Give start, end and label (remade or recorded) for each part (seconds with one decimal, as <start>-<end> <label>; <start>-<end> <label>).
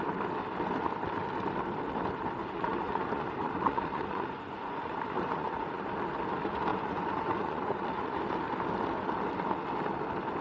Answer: 0.0-2.4 recorded; 2.4-5.8 remade; 5.8-6.7 recorded; 6.7-8.2 remade; 8.2-10.4 recorded